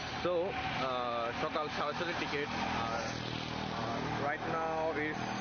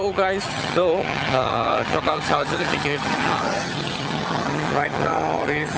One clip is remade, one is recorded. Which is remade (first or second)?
second